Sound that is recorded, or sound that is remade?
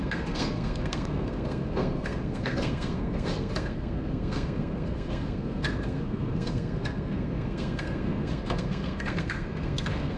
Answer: remade